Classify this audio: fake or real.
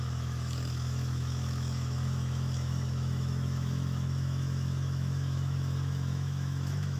fake